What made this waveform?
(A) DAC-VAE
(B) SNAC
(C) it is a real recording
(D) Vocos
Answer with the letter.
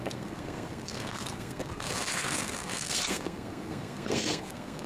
B